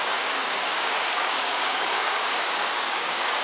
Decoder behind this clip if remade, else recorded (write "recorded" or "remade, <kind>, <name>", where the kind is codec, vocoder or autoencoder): remade, codec, DAC